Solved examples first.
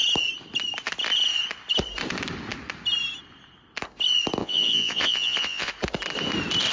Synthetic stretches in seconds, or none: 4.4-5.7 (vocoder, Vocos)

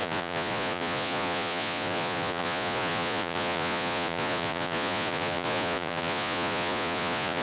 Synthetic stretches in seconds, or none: 0.0-7.4 (vocoder, Vocos)